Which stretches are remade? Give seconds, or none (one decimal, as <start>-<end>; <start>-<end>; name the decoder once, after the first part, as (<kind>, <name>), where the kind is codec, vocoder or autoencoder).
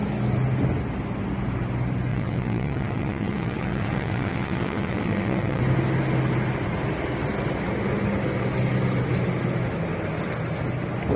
2.1-5.6 (vocoder, WaveNeXt)